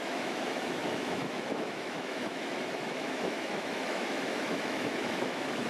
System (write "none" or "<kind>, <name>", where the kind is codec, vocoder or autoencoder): autoencoder, DAC-VAE